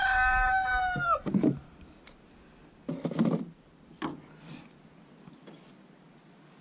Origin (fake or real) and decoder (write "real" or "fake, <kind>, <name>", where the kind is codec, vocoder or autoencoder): real